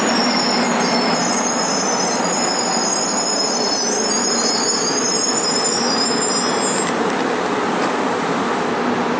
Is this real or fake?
real